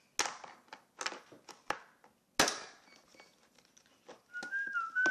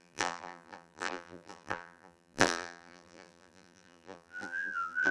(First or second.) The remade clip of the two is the second